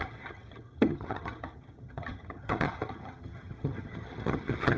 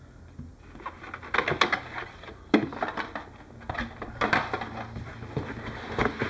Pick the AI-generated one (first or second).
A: first